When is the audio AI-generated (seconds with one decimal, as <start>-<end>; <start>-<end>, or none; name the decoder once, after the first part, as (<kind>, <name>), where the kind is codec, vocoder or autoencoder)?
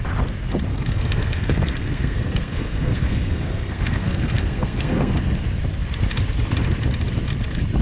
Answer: 0.7-5.1 (codec, SNAC)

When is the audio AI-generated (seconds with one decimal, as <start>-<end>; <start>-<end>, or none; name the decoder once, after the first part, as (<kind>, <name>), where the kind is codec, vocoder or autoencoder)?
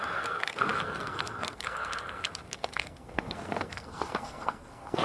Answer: 0.0-5.0 (codec, SNAC)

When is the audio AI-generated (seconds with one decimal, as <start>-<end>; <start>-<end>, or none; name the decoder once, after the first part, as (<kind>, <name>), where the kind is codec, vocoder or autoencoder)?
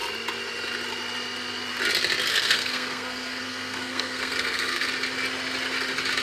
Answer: 2.3-4.9 (codec, SNAC)